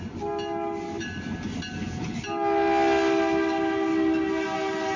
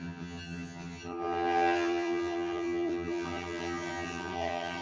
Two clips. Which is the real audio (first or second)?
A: first